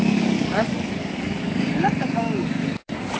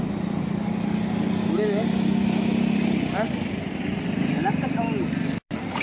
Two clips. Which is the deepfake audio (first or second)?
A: first